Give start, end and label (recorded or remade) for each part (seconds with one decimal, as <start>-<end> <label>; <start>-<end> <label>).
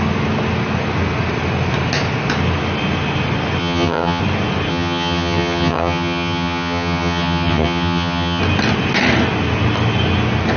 0.0-3.6 recorded; 3.6-4.2 remade; 4.2-4.7 recorded; 4.7-8.4 remade; 8.4-10.6 recorded